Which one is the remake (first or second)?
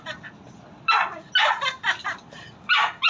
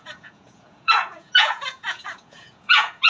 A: second